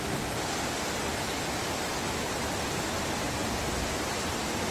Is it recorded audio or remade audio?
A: recorded